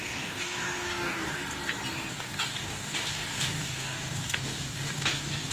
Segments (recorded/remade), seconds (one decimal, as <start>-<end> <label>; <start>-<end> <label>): 0.0-1.4 remade; 1.4-2.1 recorded; 2.1-5.5 remade